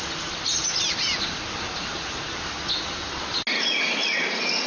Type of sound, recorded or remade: recorded